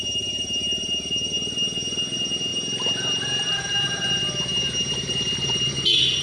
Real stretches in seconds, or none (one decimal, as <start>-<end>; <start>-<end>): 0.0-6.2